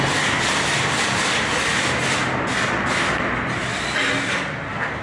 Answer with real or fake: real